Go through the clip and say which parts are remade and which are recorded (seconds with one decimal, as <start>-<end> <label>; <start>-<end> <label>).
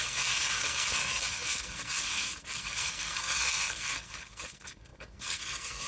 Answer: 0.0-5.9 remade